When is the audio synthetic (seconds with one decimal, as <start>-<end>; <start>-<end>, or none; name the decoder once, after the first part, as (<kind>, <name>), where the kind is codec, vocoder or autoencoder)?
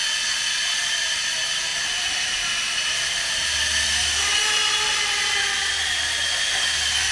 none